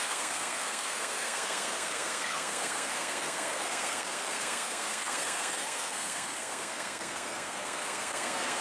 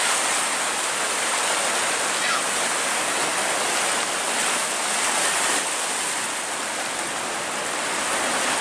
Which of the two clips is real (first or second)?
second